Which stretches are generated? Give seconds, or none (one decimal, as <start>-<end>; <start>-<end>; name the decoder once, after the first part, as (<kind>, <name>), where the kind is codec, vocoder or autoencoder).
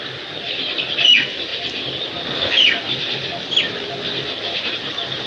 none